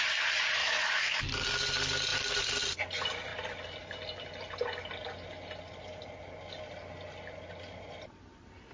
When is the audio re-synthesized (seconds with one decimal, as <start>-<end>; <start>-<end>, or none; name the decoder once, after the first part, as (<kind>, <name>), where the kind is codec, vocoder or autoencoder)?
0.6-1.2 (autoencoder, DAC-VAE)